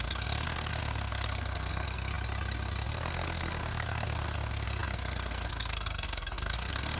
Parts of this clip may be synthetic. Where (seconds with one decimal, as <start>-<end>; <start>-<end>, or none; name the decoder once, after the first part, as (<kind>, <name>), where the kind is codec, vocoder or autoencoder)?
0.0-2.1 (codec, SNAC); 2.9-7.0